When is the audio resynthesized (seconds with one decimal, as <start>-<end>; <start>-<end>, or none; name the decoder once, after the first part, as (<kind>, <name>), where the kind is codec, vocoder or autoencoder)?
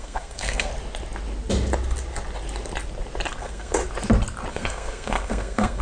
0.0-0.7 (codec, SNAC); 3.4-3.8; 4.5-5.8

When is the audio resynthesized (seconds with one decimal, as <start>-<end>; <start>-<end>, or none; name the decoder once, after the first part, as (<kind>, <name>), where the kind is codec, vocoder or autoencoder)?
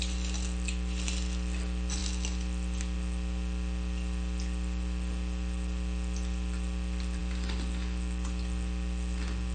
none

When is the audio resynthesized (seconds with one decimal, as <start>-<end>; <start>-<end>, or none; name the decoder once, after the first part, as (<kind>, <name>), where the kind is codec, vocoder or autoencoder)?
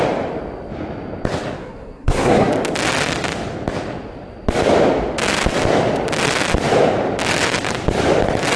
1.6-2.5 (codec, SNAC)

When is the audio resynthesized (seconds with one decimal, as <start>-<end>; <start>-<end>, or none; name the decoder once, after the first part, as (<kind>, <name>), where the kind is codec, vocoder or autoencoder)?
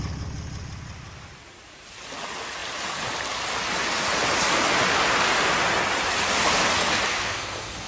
7.1-7.9 (codec, SNAC)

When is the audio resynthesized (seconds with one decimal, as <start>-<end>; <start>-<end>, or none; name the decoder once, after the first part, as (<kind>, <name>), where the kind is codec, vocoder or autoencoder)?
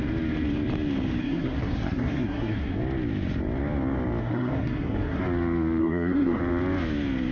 1.2-2.8 (codec, SNAC); 4.2-5.2; 5.8-6.4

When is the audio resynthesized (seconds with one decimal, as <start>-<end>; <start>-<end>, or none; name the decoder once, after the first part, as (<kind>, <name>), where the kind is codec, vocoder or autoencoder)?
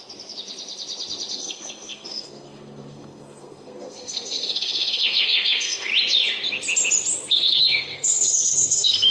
1.3-5.9 (codec, SNAC); 7.3-9.1